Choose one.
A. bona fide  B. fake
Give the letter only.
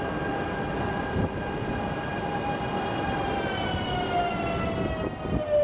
A